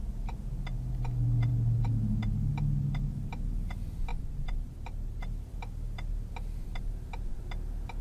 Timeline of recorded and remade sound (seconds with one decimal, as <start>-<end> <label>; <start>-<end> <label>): 0.0-4.1 recorded; 4.1-5.2 remade; 5.2-8.0 recorded